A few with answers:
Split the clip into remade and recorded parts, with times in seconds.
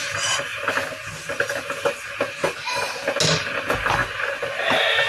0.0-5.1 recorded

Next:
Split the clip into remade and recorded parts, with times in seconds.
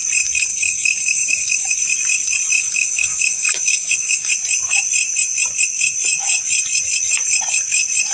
0.0-0.5 recorded; 0.5-1.7 remade; 1.7-2.6 recorded; 2.6-4.3 remade; 4.3-8.1 recorded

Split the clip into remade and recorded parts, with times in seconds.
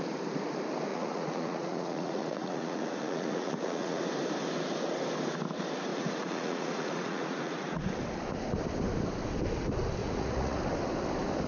0.0-0.9 recorded; 0.9-4.0 remade; 4.0-5.9 recorded; 5.9-7.8 remade; 7.8-10.0 recorded; 10.0-10.6 remade; 10.6-11.5 recorded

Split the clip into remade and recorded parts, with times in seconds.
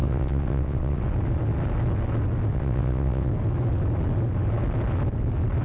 0.0-1.0 remade; 1.0-2.5 recorded; 2.5-3.3 remade; 3.3-5.6 recorded